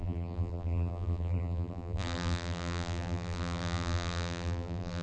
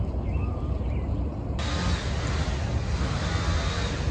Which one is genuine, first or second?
second